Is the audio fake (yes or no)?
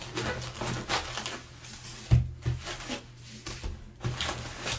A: no